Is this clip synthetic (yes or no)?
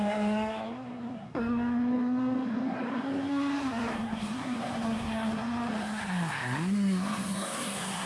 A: yes